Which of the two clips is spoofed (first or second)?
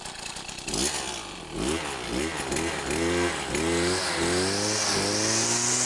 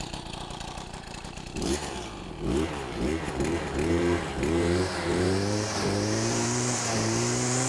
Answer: second